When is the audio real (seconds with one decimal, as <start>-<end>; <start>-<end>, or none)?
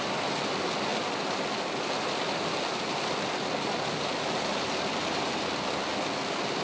0.0-6.6